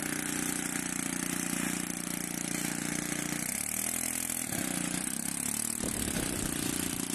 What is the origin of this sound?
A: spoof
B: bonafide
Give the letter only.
B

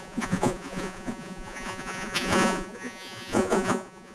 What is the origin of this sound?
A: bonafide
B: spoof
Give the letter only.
B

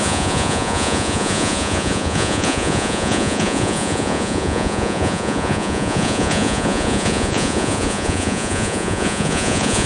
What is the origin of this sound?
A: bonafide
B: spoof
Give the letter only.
B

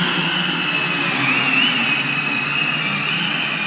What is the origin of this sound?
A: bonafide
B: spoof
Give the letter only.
A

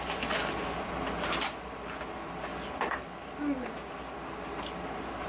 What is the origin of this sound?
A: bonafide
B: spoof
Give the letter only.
A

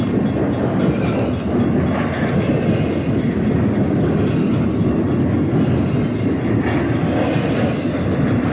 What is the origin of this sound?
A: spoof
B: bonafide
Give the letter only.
B